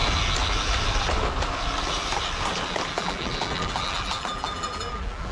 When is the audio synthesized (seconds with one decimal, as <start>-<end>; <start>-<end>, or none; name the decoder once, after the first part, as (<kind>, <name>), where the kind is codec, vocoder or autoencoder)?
2.9-5.3 (vocoder, BigVGAN v2)